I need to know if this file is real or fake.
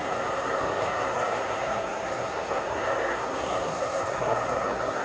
fake